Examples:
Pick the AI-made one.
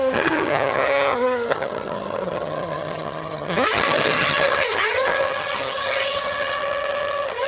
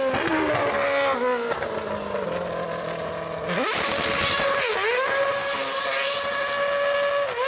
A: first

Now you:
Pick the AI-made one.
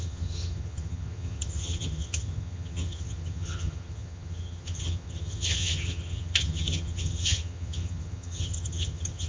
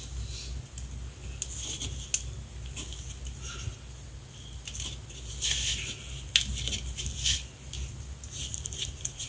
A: first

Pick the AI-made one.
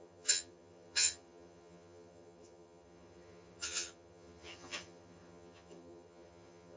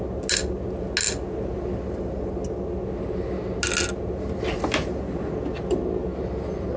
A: first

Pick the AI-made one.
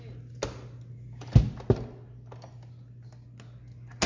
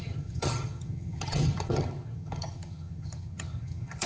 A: second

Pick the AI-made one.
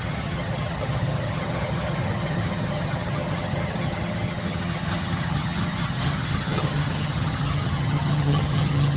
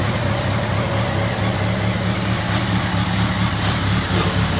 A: first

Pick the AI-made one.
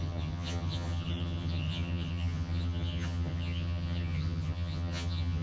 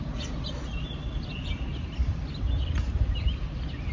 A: first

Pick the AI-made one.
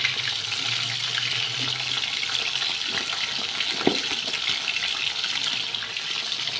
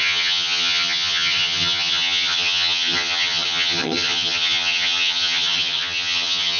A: second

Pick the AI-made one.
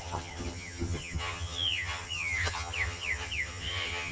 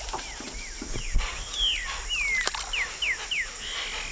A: first